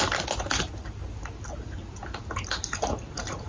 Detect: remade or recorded recorded